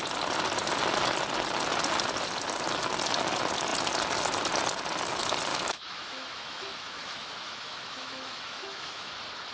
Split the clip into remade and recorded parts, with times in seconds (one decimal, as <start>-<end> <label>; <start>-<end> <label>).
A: 0.0-5.5 recorded; 5.5-9.1 remade; 9.1-9.5 recorded